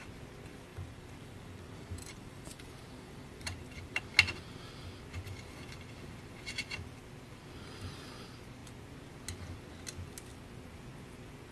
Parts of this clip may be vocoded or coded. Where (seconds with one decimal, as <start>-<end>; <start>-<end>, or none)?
0.7-4.0